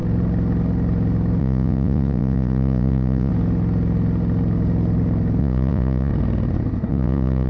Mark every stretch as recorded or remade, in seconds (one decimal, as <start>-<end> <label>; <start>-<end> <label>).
0.0-1.4 recorded; 1.4-3.3 remade; 3.3-5.4 recorded; 5.4-6.1 remade; 6.1-6.9 recorded; 6.9-7.5 remade